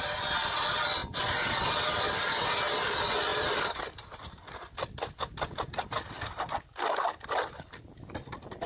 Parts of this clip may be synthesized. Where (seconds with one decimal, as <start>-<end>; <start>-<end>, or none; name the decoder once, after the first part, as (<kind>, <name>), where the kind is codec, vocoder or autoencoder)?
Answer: none